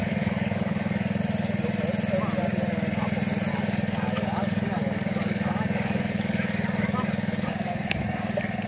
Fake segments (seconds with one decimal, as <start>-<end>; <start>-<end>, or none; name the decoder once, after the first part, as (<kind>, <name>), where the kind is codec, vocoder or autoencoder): 0.0-1.2 (codec, DAC); 3.5-8.7

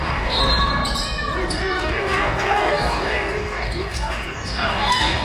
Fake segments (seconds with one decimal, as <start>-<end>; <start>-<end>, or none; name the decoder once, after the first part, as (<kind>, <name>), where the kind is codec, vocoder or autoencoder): 0.0-0.4 (codec, DAC); 1.5-5.2